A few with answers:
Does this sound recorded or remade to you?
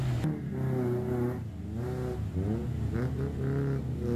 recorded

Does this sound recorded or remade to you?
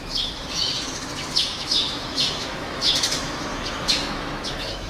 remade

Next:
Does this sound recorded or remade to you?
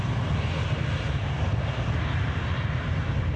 recorded